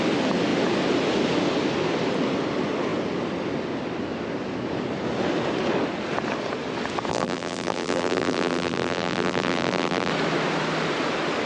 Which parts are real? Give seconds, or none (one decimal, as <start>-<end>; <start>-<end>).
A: 0.0-7.1; 10.1-11.5